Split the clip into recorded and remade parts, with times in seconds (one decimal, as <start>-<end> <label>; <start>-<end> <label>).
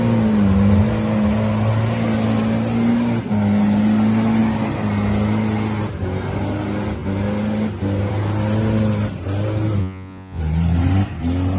0.0-9.8 recorded; 9.8-10.4 remade; 10.4-11.6 recorded